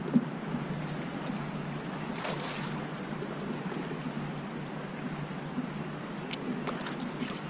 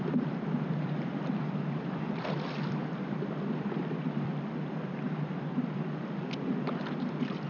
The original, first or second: first